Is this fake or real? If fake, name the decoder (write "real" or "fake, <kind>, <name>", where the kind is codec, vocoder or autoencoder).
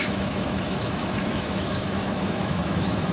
fake, autoencoder, DAC-VAE